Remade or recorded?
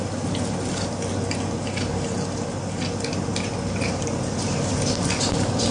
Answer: recorded